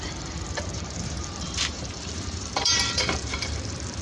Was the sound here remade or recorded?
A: remade